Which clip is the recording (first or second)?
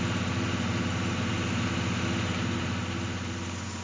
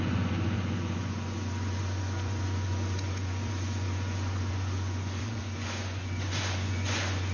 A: first